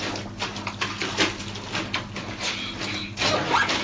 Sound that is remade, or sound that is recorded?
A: recorded